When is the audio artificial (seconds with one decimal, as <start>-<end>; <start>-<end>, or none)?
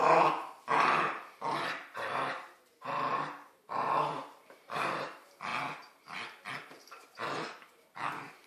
0.0-5.5; 6.5-8.5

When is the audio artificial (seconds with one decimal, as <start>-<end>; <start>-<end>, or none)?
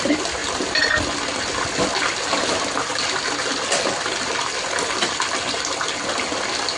none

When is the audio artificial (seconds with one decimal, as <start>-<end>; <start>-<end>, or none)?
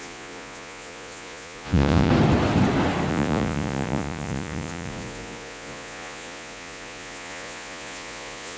0.0-2.1; 3.1-8.6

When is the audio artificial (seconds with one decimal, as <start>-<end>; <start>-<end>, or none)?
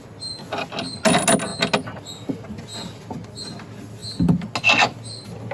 none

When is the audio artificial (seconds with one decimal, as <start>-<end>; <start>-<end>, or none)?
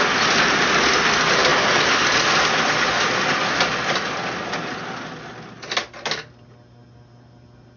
none